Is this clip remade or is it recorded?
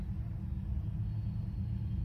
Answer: recorded